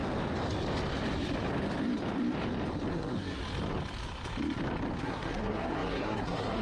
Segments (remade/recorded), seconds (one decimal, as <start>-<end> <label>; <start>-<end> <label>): 0.0-2.9 recorded; 2.9-3.4 remade; 3.4-5.0 recorded; 5.0-6.6 remade

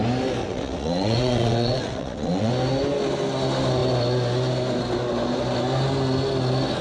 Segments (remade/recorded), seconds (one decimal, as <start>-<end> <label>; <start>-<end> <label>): 0.0-0.4 recorded; 0.4-2.5 remade; 2.5-6.8 recorded

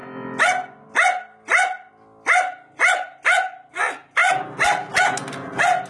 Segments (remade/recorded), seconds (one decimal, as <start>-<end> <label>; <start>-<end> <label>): 0.0-5.9 recorded

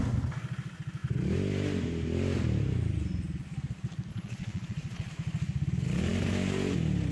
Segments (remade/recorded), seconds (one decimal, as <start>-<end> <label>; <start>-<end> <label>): 0.0-4.1 recorded; 4.1-5.1 remade; 5.1-7.1 recorded

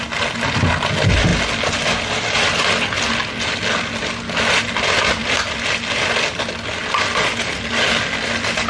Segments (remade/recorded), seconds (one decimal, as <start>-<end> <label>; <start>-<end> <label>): 0.0-8.7 recorded

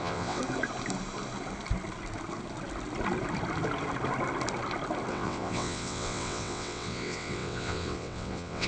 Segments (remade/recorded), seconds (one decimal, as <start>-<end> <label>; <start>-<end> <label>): 0.0-0.4 remade; 0.4-5.1 recorded; 5.1-8.7 remade